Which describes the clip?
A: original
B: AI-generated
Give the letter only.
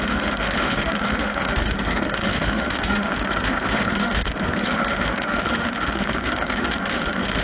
B